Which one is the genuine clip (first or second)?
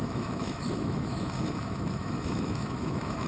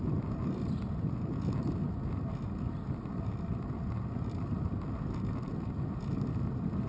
second